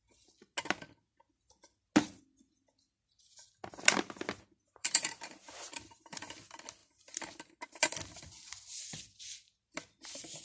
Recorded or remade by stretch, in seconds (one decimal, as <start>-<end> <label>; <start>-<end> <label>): 0.0-4.8 recorded; 4.8-6.3 remade; 6.3-10.4 recorded